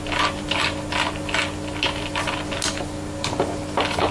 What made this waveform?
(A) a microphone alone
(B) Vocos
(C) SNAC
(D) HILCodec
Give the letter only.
A